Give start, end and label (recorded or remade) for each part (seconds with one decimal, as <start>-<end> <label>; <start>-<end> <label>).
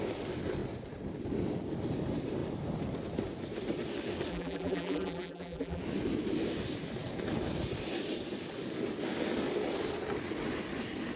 0.0-4.3 recorded; 4.3-5.8 remade; 5.8-11.2 recorded